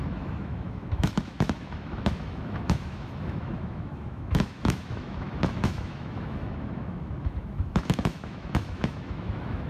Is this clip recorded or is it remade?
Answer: remade